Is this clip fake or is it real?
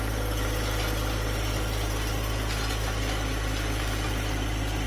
real